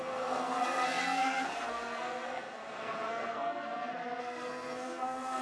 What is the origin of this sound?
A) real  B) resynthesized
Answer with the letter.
B